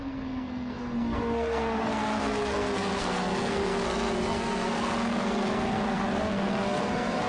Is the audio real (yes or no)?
no